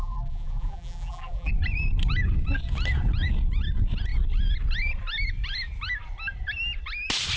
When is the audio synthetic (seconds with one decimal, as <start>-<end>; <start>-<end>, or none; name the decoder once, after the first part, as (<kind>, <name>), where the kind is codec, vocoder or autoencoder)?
0.0-1.5 (vocoder, BigVGAN v2)